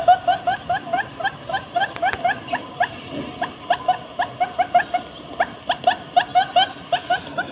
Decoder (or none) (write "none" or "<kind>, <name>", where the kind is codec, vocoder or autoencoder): none